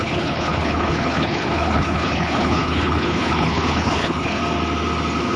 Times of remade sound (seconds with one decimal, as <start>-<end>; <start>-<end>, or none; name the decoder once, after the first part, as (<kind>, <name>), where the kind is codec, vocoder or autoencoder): 0.0-4.4 (codec, HILCodec)